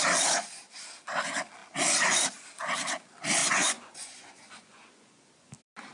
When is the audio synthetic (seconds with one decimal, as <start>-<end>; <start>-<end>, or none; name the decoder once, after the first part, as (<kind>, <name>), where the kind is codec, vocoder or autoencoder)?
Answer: 3.4-5.5 (vocoder, Vocos)